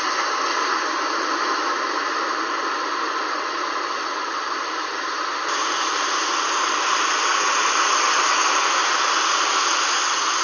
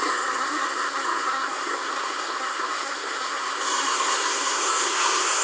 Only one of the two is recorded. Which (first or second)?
first